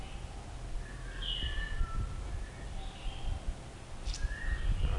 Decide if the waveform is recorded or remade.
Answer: recorded